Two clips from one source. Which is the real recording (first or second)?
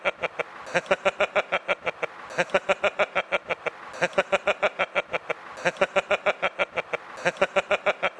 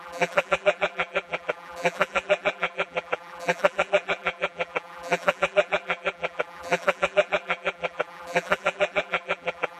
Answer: first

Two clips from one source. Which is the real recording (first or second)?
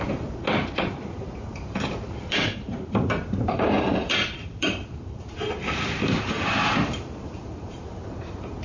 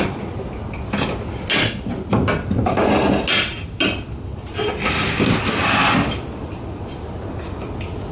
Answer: second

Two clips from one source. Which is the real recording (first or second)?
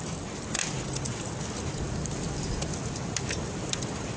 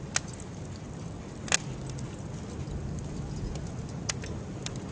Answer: second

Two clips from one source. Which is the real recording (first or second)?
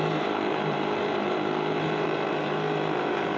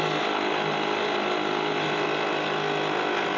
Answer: second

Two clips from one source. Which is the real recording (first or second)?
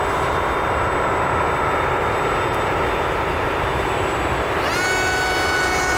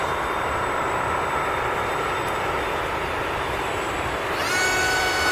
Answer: first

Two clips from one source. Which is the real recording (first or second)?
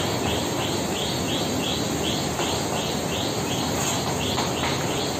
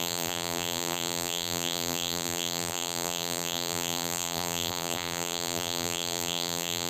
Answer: first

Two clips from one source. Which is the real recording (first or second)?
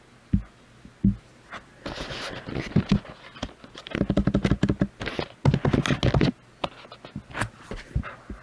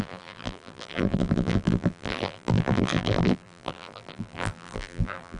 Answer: first